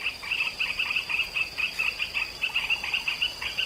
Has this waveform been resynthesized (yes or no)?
no